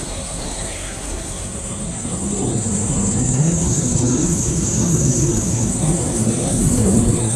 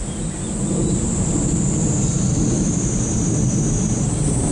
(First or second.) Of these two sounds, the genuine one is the second